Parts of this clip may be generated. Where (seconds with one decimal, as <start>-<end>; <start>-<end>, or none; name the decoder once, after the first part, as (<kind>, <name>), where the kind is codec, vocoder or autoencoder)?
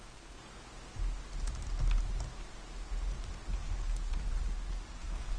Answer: 0.0-0.4 (codec, SNAC); 3.6-4.1; 4.9-5.4